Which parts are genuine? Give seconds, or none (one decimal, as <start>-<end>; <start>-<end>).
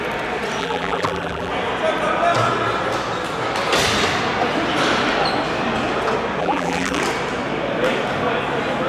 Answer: 0.0-0.6; 1.5-6.4; 7.0-8.9